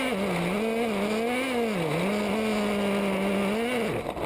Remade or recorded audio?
recorded